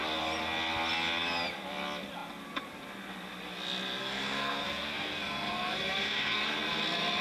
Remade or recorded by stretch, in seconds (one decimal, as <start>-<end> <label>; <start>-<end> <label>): 0.0-4.0 recorded; 4.0-6.4 remade; 6.4-7.2 recorded